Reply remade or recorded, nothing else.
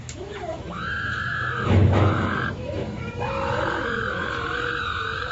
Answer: remade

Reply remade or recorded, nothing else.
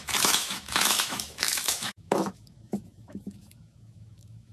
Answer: remade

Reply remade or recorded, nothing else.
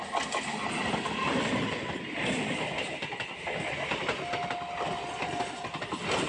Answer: recorded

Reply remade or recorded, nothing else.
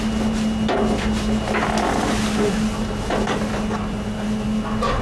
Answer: recorded